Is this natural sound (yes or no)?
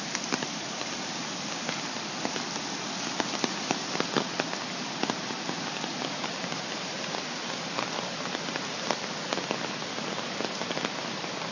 yes